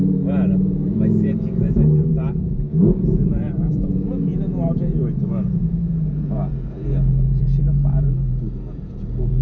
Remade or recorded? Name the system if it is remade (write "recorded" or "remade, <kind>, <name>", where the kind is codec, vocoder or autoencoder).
remade, vocoder, Vocos